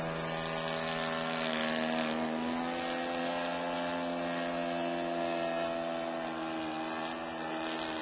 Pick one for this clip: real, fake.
real